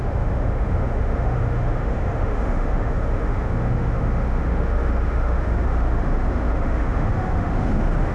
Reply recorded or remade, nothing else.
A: remade